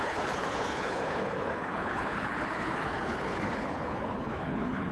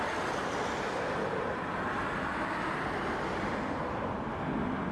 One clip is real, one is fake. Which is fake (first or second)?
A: first